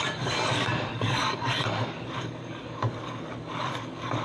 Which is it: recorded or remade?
remade